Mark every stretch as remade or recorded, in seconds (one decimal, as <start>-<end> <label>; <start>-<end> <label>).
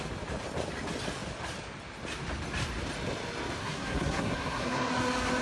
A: 0.0-3.6 recorded; 3.6-4.9 remade; 4.9-5.4 recorded